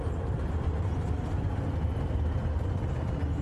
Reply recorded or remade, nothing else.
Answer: recorded